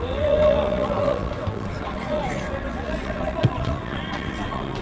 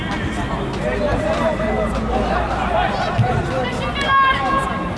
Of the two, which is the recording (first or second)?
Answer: second